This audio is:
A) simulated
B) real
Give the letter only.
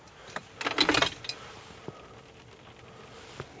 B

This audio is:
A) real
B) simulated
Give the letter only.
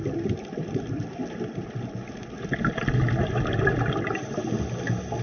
A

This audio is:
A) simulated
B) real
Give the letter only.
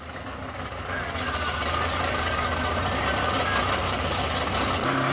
B